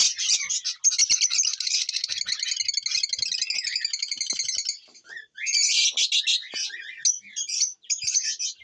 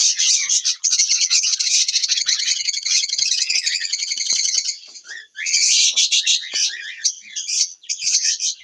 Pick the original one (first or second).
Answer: first